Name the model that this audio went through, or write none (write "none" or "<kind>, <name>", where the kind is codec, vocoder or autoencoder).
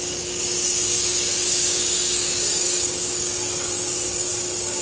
codec, DAC